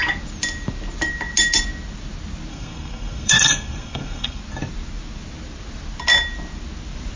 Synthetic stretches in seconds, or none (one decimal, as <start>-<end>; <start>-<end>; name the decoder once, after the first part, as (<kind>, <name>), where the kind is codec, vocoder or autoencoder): 2.5-4.4 (codec, SNAC)

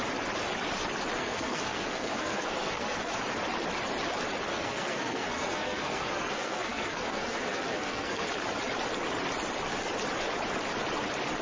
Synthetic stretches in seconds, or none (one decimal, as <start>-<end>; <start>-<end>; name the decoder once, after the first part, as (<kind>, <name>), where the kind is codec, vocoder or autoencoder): 1.2-3.1 (codec, SNAC); 4.5-8.3

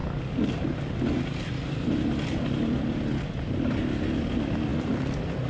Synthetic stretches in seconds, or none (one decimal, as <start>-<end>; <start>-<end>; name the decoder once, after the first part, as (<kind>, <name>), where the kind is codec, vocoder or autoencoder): none

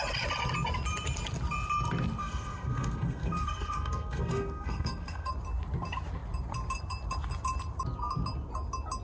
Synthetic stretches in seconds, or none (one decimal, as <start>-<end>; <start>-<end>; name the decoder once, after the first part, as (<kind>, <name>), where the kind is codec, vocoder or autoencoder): 2.2-5.3 (codec, SNAC)

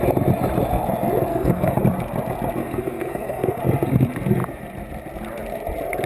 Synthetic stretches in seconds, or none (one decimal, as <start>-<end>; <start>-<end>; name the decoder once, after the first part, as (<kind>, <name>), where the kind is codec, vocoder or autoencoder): 1.3-1.8 (codec, SNAC); 2.6-3.6